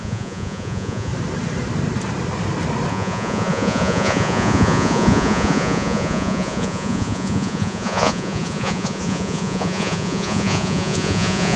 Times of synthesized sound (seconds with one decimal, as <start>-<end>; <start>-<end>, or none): 0.0-1.1; 2.9-11.6